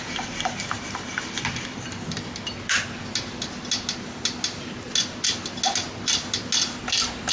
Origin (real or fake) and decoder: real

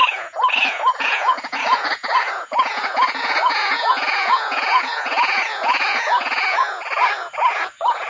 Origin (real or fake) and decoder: fake, vocoder, Vocos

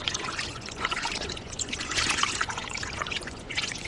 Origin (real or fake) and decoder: fake, vocoder, Vocos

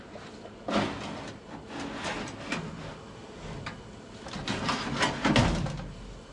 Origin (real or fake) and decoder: real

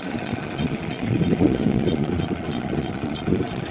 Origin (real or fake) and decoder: fake, vocoder, Vocos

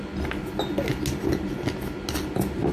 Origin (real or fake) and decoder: real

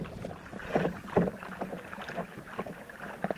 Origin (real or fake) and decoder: real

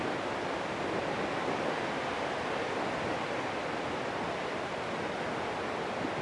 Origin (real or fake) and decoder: real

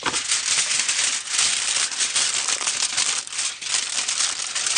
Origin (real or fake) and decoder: real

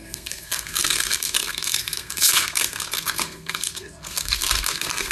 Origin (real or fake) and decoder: fake, codec, SNAC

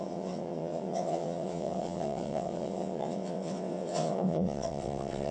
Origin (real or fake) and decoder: fake, vocoder, WaveNeXt